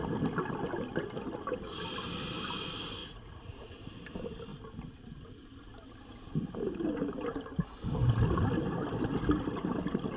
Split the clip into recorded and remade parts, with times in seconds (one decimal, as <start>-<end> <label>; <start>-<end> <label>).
0.0-3.0 recorded; 3.0-3.7 remade; 3.7-10.2 recorded